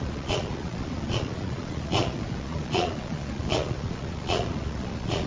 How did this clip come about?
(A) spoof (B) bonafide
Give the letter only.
A